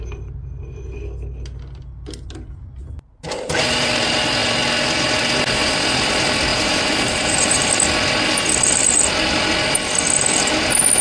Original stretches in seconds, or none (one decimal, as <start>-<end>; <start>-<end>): 0.0-2.8; 3.9-6.5; 7.7-11.0